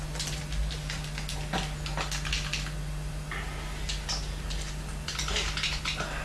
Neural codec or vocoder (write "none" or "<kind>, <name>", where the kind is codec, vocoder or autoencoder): none